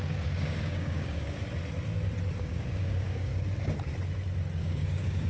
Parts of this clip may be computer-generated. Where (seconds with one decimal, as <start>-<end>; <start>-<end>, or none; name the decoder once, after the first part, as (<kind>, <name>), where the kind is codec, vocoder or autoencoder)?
0.0-1.4 (codec, DAC); 2.4-3.3; 4.6-5.3